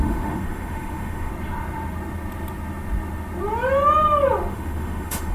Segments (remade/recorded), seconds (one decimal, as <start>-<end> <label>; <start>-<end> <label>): 0.0-1.3 remade; 1.3-4.5 recorded; 4.5-5.3 remade